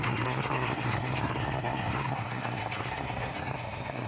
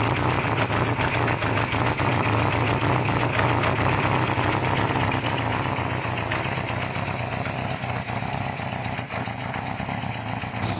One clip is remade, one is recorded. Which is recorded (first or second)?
second